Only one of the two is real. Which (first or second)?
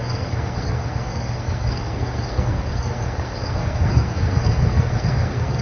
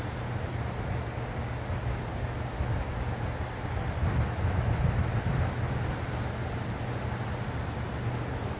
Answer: second